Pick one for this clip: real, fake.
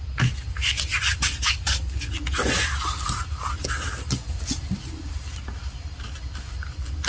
real